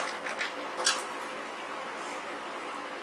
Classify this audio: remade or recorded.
recorded